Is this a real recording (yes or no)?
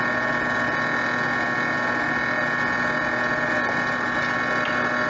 yes